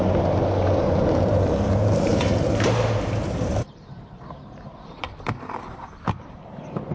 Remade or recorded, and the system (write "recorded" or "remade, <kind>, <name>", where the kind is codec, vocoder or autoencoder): remade, vocoder, BigVGAN v2